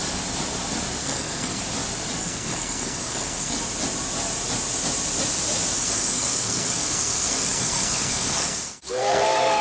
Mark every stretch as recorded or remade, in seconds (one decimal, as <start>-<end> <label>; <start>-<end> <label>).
0.0-1.0 recorded; 1.0-1.6 remade; 1.6-2.2 recorded; 2.2-3.6 remade; 3.6-5.8 recorded; 5.8-9.6 remade